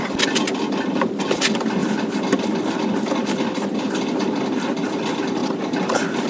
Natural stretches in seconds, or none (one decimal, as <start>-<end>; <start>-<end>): 0.0-6.3